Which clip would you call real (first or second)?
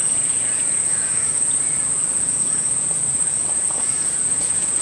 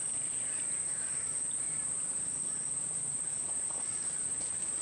second